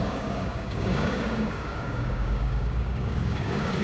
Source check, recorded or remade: remade